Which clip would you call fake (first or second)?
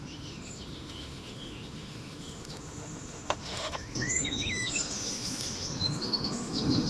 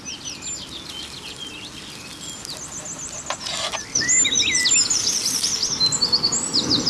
first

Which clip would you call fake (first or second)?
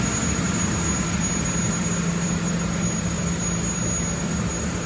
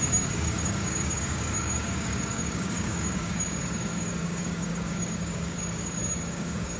second